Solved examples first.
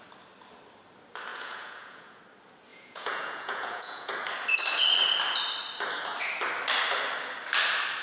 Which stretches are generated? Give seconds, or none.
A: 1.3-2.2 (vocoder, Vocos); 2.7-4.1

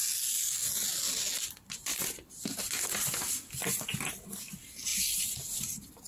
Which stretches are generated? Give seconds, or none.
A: none

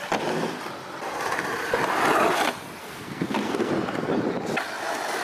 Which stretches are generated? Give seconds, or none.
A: 2.8-3.7 (codec, SNAC)

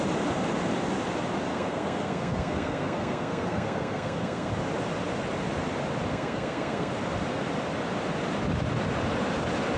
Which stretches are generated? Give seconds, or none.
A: 1.5-4.5 (codec, SNAC); 6.1-6.9

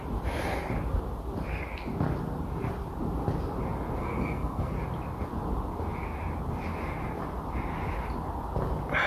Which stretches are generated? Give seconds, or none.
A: 4.0-4.7 (codec, SNAC)

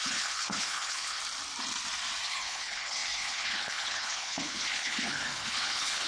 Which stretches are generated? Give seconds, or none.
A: 0.0-1.2 (codec, HILCodec); 2.3-6.1

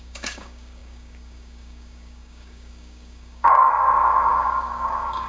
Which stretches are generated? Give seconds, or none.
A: 0.0-5.3 (codec, DAC)

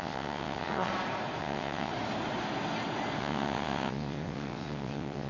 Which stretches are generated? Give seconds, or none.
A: 0.0-0.9 (vocoder, WaveNeXt); 1.4-1.9; 3.2-5.3